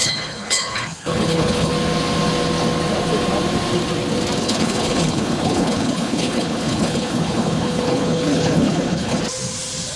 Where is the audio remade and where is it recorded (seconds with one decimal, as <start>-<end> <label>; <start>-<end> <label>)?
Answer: 0.0-1.7 remade; 1.7-4.4 recorded; 4.4-9.2 remade; 9.2-10.0 recorded